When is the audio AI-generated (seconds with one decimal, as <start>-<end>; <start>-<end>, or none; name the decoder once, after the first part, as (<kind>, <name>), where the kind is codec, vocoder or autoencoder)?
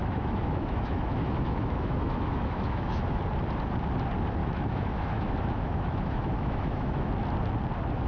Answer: 0.0-3.2 (autoencoder, DAC-VAE); 4.4-7.1